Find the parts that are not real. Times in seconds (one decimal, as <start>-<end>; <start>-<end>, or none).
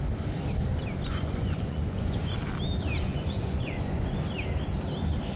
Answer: 1.1-2.3; 3.1-4.2